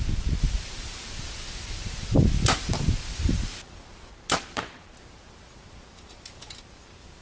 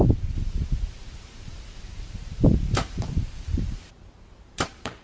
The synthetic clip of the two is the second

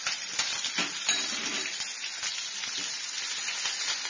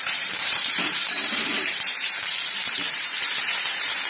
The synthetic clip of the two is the second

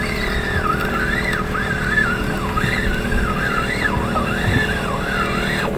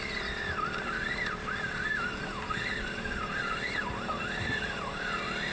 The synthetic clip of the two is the second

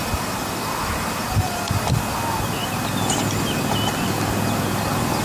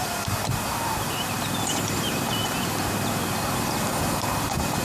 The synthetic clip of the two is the second